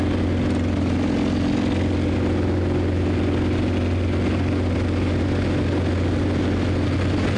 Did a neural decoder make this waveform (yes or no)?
no